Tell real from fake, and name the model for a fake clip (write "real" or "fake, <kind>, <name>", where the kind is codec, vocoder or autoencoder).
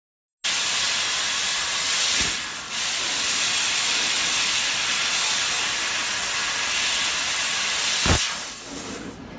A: real